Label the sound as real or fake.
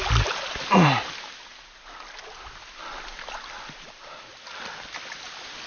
real